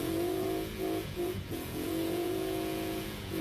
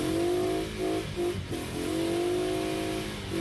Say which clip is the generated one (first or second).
first